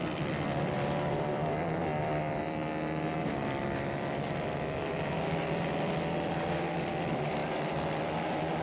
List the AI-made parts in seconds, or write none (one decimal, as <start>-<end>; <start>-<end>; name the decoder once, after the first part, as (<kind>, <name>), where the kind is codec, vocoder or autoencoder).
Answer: 0.0-2.6 (vocoder, BigVGAN v2); 3.2-7.4; 8.0-8.6